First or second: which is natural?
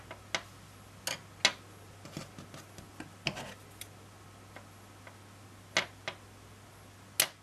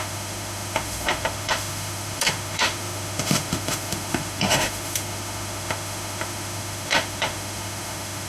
first